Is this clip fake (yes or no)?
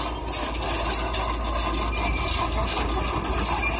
no